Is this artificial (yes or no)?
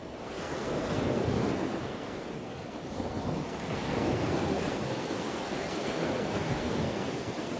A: yes